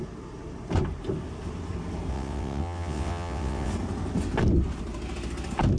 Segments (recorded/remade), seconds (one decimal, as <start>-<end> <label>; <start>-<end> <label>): 0.0-2.1 recorded; 2.1-3.7 remade; 3.7-5.8 recorded